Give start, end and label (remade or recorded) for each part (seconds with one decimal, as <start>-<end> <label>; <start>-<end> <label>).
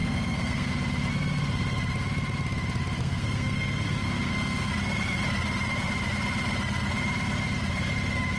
0.0-0.7 remade; 0.7-3.0 recorded; 3.0-4.7 remade; 4.7-8.4 recorded